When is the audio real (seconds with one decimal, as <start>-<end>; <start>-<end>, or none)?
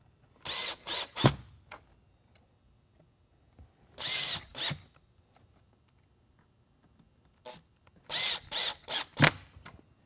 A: 0.0-0.6; 1.2-10.1